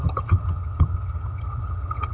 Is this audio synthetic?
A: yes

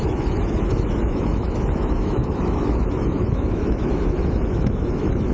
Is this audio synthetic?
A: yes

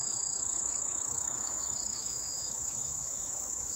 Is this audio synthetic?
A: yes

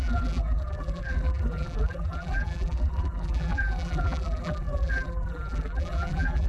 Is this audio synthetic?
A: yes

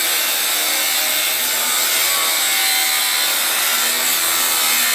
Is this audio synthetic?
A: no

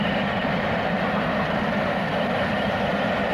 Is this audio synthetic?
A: no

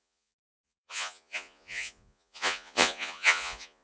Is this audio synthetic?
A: yes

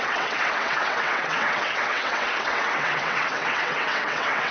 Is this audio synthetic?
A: yes